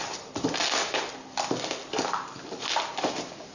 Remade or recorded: recorded